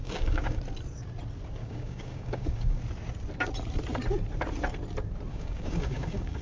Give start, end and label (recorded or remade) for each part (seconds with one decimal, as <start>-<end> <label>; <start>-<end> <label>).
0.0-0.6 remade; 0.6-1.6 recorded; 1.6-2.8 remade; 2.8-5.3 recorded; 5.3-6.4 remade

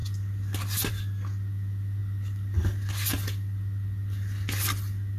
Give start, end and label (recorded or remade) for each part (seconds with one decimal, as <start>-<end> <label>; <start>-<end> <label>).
0.0-5.2 recorded

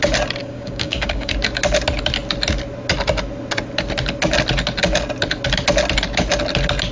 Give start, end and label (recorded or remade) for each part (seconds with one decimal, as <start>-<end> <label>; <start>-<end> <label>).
0.0-0.4 recorded; 0.4-1.3 remade; 1.3-6.9 recorded

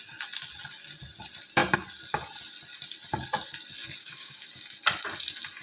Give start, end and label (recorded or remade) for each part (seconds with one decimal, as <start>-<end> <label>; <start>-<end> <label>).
0.0-4.0 recorded; 4.0-4.5 remade; 4.5-5.6 recorded

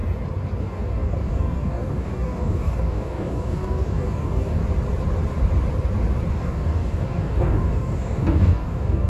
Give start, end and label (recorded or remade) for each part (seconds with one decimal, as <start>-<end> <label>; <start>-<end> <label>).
0.0-0.6 recorded; 0.6-4.6 remade; 4.6-6.3 recorded; 6.3-9.1 remade

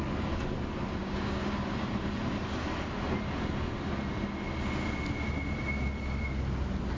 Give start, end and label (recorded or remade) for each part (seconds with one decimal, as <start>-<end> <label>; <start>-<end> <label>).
0.0-1.0 recorded; 1.0-1.5 remade; 1.5-7.0 recorded

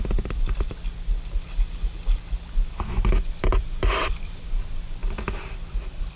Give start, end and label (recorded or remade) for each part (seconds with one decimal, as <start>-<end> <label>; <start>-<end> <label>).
0.0-6.2 recorded

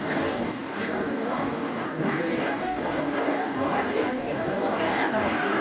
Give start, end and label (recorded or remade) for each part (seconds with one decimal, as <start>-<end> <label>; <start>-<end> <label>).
0.0-5.6 remade